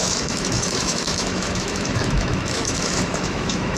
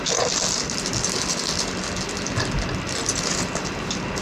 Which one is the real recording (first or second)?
second